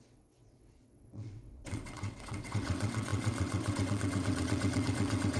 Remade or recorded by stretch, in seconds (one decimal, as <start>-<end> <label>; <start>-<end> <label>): 0.0-5.4 remade